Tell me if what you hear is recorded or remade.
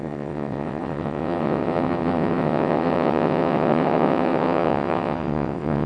remade